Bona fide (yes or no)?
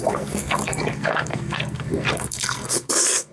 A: no